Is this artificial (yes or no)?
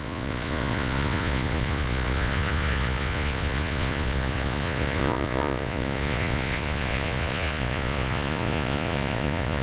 yes